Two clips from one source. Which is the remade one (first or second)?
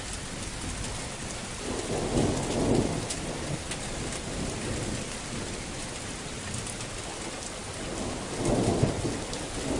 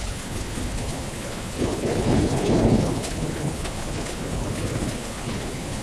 second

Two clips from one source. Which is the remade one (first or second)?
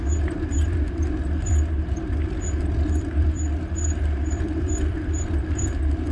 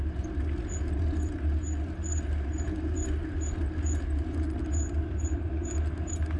first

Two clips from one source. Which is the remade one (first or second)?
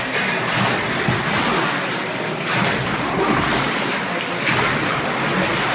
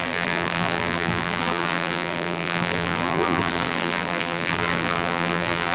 second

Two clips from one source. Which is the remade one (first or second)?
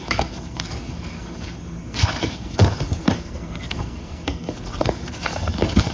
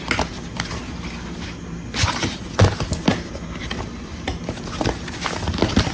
first